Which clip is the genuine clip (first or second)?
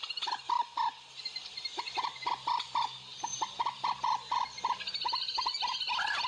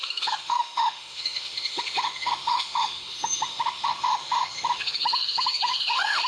first